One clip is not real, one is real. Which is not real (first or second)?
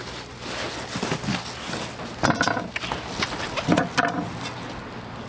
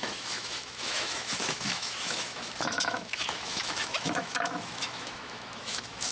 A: second